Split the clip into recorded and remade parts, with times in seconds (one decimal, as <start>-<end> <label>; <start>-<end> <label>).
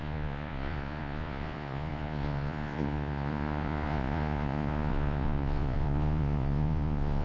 0.0-7.2 remade